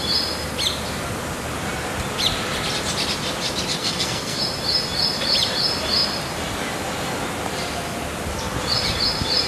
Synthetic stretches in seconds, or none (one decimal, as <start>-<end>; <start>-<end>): 3.8-4.4